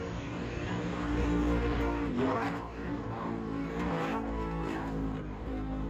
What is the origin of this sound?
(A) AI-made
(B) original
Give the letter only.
A